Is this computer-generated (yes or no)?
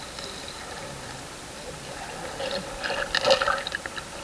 no